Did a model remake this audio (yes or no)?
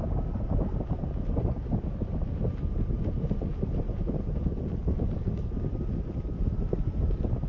no